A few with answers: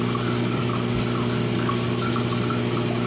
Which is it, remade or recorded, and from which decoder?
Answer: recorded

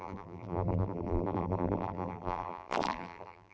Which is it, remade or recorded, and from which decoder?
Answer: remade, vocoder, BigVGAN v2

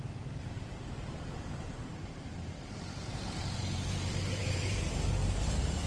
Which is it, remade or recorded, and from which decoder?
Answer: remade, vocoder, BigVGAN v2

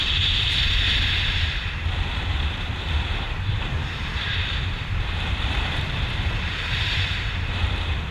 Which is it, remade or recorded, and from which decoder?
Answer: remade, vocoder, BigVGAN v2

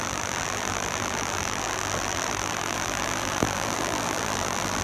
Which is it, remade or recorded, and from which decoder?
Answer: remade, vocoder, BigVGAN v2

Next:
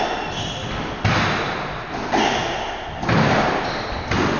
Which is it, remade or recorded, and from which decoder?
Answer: recorded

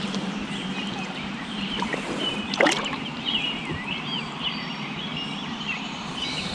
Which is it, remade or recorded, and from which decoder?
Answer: remade, vocoder, BigVGAN v2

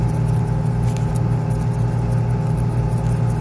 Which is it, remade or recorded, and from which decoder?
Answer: recorded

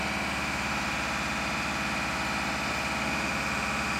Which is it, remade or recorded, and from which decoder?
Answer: recorded